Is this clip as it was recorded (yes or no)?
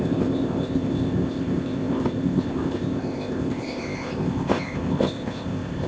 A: no